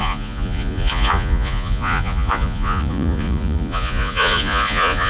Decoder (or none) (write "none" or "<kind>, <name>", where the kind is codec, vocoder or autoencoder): vocoder, Vocos